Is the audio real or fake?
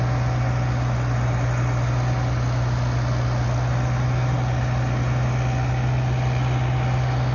real